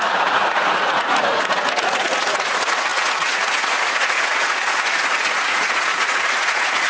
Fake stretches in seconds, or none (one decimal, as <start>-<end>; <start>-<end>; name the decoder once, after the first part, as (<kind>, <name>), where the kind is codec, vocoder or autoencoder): 0.0-6.9 (vocoder, Vocos)